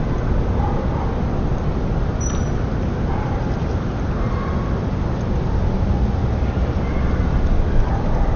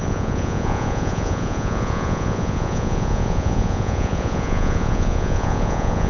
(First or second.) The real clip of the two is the first